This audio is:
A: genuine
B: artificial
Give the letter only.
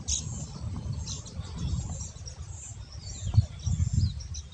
A